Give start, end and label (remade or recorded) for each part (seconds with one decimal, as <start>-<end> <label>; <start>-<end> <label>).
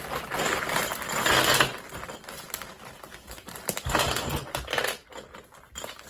0.0-2.2 recorded; 2.2-4.8 remade; 4.8-6.1 recorded